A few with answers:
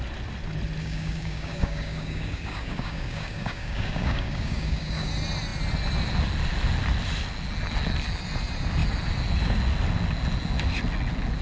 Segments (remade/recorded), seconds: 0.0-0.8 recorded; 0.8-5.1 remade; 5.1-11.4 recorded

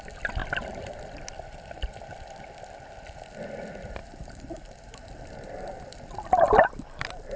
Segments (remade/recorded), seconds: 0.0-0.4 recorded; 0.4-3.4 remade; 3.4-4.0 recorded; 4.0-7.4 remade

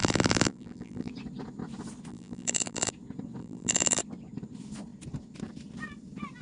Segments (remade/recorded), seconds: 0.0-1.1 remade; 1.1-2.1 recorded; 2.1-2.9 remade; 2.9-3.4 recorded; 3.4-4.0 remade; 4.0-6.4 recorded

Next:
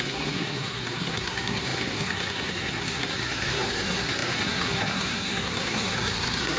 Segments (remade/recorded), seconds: 0.0-6.6 remade

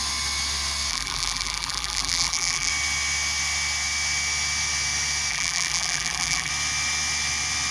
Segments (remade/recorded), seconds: 0.0-0.9 recorded; 0.9-2.7 remade; 2.7-5.3 recorded; 5.3-6.5 remade; 6.5-7.7 recorded